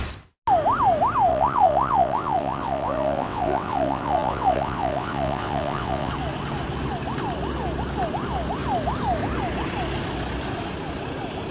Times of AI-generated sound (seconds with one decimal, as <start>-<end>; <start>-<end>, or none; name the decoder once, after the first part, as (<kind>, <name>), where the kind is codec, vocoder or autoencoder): 1.3-6.1 (vocoder, WaveNeXt)